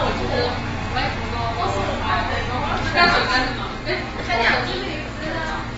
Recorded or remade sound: recorded